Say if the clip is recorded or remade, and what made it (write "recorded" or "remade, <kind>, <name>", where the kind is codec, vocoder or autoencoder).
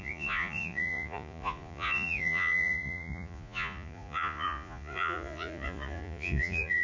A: remade, vocoder, Vocos